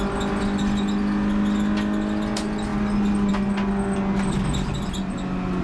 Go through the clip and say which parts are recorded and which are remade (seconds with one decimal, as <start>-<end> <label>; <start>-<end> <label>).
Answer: 0.0-5.6 recorded